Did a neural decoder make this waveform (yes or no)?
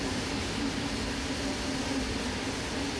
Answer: no